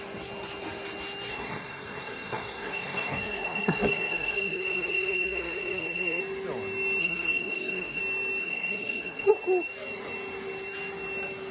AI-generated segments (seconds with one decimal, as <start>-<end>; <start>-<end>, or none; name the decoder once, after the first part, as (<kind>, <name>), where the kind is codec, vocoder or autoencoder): 1.3-6.2 (codec, SNAC); 7.0-8.0; 8.4-9.3